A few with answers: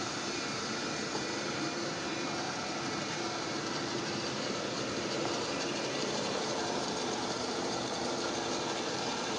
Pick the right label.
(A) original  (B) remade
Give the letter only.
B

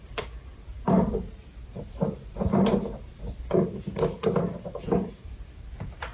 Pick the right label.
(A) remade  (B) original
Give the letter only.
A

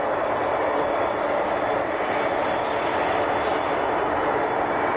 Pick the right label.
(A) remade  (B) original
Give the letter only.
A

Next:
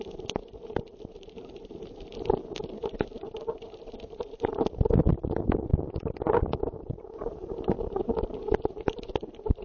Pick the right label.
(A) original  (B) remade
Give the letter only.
B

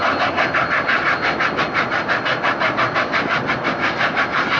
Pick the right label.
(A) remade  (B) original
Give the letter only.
B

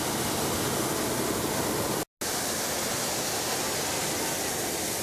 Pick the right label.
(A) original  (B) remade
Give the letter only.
A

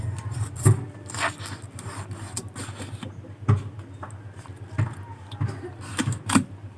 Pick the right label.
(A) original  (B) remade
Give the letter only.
A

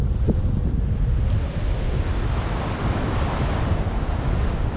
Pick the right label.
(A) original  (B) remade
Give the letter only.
A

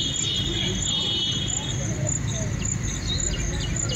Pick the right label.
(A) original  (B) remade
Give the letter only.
A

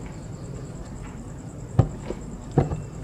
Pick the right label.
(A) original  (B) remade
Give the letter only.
B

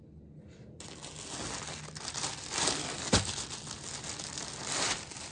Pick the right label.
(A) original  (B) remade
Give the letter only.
A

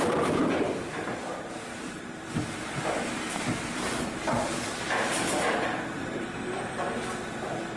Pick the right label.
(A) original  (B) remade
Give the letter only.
B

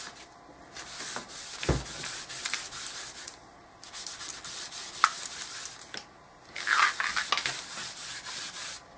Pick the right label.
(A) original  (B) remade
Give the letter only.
A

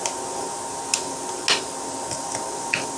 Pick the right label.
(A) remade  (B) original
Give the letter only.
B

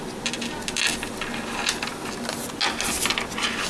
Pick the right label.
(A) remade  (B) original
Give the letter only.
B